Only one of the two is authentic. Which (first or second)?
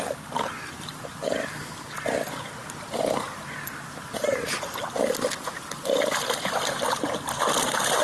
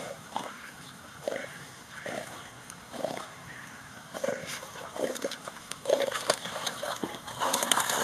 first